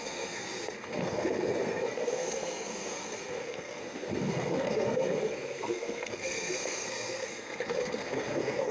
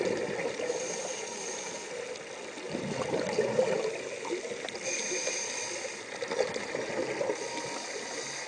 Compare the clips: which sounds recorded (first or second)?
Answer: second